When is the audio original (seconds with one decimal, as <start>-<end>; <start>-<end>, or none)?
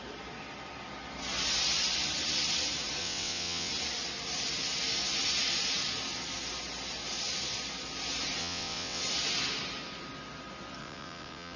0.0-3.0; 3.7-8.4; 9.0-10.8